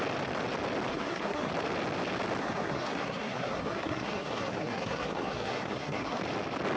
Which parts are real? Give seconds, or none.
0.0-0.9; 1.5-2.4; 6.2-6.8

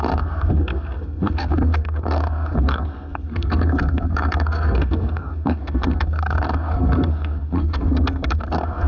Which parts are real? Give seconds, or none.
none